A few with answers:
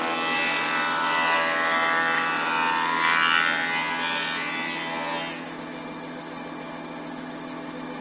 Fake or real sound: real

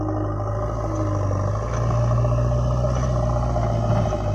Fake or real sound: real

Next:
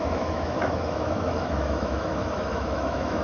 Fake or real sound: fake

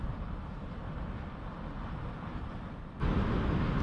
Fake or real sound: real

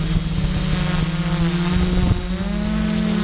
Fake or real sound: real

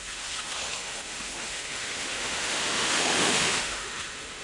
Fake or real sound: fake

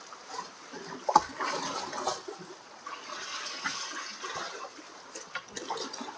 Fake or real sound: real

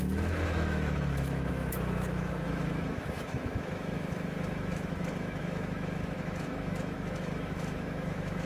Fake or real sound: fake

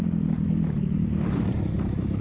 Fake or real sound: real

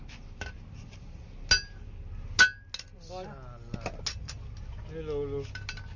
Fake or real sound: real